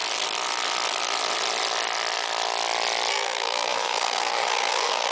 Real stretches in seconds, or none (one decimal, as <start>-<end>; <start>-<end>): 0.0-3.1